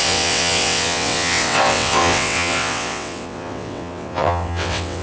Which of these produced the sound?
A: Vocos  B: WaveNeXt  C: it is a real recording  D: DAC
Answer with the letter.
B